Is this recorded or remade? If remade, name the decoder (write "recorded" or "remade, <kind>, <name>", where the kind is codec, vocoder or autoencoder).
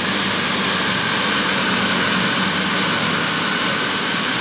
recorded